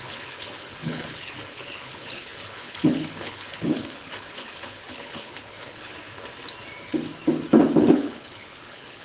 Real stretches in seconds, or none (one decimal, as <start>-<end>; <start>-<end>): 5.9-7.8